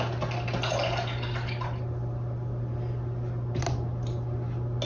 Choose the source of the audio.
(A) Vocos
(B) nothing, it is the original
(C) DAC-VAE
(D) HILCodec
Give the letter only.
B